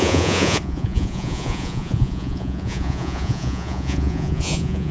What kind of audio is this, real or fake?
fake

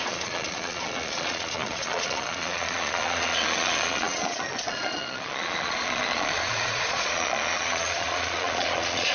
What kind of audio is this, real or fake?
fake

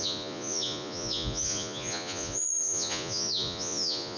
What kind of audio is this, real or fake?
fake